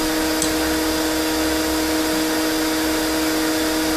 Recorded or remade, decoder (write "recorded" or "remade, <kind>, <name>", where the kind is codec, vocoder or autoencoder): recorded